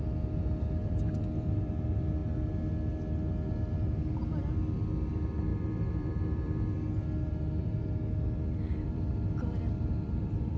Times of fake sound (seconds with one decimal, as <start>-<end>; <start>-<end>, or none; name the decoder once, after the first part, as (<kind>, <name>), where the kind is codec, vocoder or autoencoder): 0.8-1.7 (vocoder, BigVGAN v2); 5.5-10.6

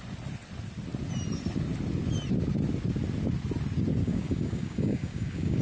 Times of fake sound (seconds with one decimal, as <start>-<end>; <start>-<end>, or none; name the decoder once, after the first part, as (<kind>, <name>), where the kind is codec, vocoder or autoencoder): 4.0-5.6 (codec, DAC)

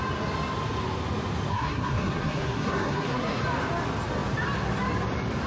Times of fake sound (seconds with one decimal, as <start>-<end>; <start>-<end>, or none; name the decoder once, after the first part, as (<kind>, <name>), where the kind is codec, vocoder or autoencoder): 1.5-3.4 (codec, SNAC)

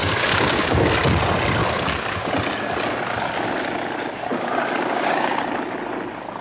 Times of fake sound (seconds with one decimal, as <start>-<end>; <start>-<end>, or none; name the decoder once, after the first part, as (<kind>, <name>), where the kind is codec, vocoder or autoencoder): 0.0-0.9 (codec, DAC); 1.6-2.3; 4.3-5.4

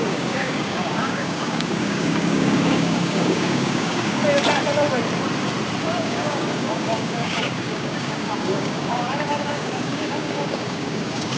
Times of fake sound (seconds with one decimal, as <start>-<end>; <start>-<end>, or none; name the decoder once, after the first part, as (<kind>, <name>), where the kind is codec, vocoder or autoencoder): 0.0-4.2 (codec, DAC); 5.8-11.4